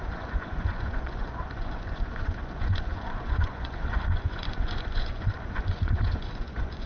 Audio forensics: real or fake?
fake